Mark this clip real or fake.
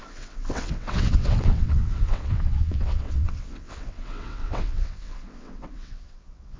fake